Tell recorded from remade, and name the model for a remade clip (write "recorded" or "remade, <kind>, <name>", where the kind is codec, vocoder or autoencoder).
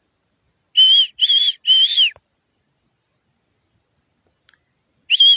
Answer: recorded